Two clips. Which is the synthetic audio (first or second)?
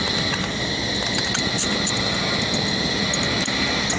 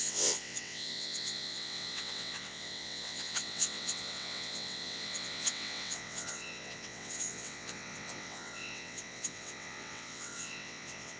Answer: second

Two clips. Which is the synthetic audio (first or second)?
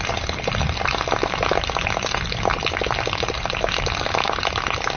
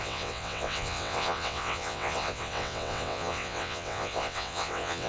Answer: second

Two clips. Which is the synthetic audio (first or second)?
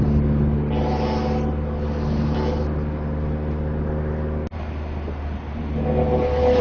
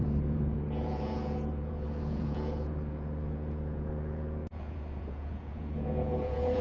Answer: second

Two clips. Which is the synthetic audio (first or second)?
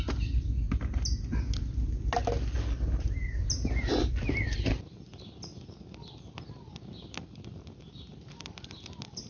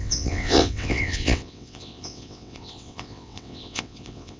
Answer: second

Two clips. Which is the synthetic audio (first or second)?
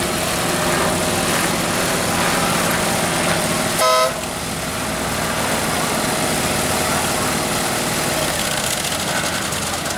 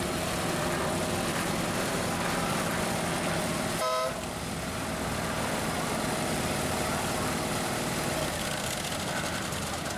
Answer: second